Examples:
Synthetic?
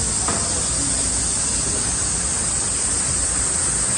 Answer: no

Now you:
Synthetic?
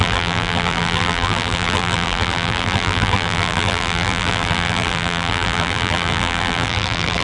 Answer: yes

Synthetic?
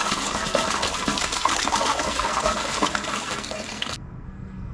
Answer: yes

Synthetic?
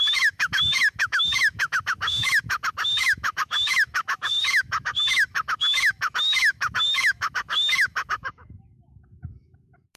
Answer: yes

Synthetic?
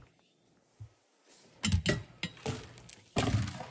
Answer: no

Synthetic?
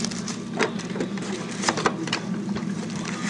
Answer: yes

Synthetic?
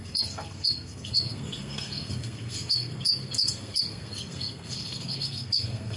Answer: yes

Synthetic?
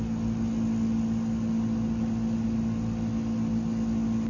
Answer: no